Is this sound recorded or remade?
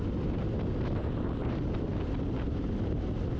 recorded